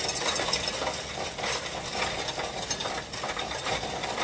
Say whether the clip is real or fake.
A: real